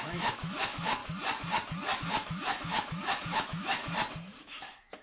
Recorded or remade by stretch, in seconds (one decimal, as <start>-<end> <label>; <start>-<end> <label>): 0.0-1.0 remade; 1.0-2.0 recorded; 2.0-3.8 remade; 3.8-4.4 recorded; 4.4-5.0 remade